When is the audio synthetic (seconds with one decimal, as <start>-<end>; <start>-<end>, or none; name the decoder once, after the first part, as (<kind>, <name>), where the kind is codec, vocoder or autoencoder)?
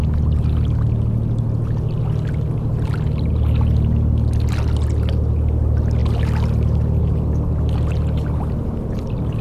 none